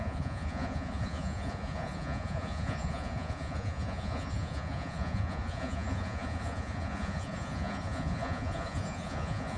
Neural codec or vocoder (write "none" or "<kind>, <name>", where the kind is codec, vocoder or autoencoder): vocoder, Vocos